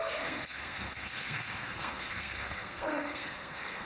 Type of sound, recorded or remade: remade